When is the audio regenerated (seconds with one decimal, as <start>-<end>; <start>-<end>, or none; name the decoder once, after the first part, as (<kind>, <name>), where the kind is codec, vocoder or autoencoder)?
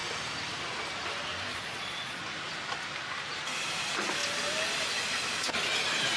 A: 1.5-2.2 (vocoder, Vocos)